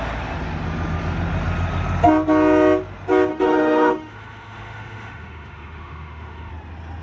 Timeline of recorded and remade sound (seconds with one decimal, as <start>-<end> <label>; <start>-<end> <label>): 0.0-3.3 recorded; 3.3-6.5 remade; 6.5-7.0 recorded